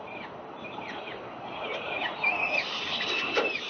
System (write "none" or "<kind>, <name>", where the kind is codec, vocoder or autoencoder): vocoder, BigVGAN v2